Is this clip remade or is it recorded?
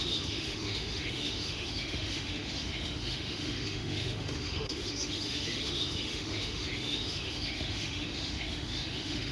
remade